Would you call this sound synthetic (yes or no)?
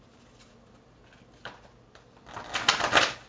no